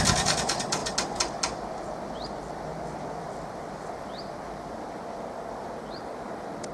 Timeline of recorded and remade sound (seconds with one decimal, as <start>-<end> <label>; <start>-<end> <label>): 0.0-2.7 recorded; 2.7-4.9 remade; 4.9-6.7 recorded